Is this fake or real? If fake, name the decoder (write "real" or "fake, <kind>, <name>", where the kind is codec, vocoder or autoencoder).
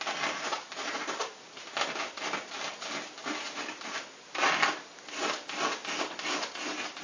real